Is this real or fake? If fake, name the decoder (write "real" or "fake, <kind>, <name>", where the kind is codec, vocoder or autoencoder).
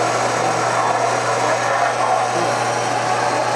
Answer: real